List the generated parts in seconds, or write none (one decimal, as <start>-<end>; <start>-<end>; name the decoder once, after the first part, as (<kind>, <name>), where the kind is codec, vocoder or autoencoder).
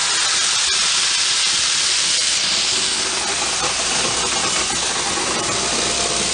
none